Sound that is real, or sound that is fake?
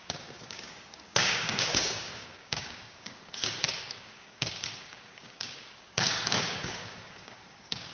fake